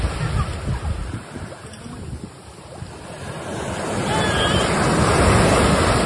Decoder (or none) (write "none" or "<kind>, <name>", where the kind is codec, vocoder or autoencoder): none